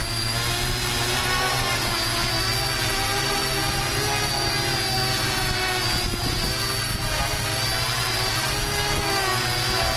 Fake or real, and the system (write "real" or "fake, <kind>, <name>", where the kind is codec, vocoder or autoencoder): real